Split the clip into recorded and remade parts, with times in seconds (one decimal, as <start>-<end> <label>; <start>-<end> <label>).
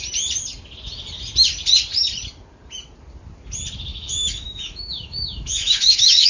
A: 0.0-3.9 recorded; 3.9-6.3 remade